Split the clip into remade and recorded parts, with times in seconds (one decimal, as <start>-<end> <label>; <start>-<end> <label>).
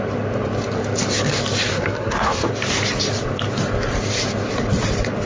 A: 0.0-1.7 recorded; 1.7-2.5 remade; 2.5-5.3 recorded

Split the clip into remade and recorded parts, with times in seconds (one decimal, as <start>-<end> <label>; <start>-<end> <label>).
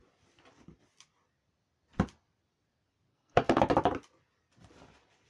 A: 0.0-3.1 recorded; 3.1-3.6 remade; 3.6-5.3 recorded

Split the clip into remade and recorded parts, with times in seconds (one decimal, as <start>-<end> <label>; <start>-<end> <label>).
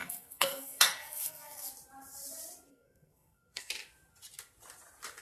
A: 0.0-1.7 remade; 1.7-2.7 recorded; 2.7-3.7 remade; 3.7-5.2 recorded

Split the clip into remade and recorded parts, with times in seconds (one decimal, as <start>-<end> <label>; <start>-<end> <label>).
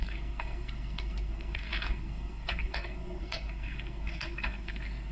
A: 0.0-5.1 remade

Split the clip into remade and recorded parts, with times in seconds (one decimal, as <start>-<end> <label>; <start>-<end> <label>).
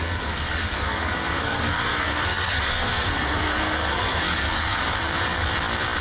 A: 0.0-4.8 remade; 4.8-6.0 recorded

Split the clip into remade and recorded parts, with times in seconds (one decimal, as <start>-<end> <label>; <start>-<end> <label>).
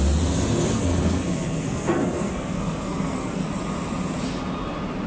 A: 0.0-0.7 recorded; 0.7-3.5 remade; 3.5-5.1 recorded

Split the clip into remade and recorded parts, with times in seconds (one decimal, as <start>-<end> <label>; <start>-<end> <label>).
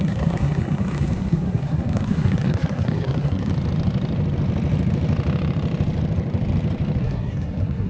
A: 0.0-3.5 remade; 3.5-7.0 recorded; 7.0-7.9 remade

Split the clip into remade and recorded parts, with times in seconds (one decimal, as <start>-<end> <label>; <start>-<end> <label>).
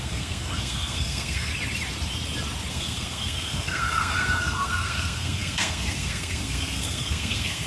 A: 0.0-1.5 remade; 1.5-2.7 recorded; 2.7-7.7 remade